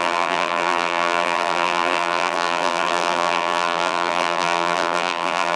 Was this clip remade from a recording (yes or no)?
yes